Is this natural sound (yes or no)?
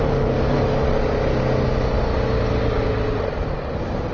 yes